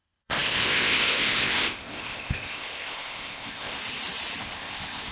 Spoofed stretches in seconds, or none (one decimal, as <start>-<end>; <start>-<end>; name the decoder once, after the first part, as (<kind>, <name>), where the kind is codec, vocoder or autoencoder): 0.0-3.8 (codec, ZipCodec); 4.4-5.1